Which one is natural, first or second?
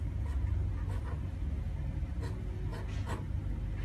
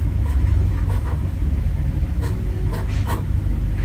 first